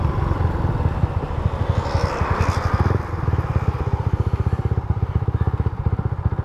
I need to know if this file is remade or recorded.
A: remade